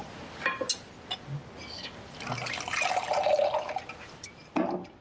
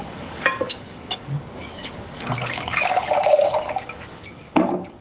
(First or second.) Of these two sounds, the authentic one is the first